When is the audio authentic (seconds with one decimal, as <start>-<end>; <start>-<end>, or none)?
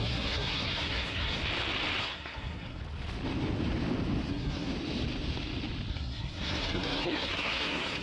1.4-2.0; 2.8-4.3; 4.7-5.9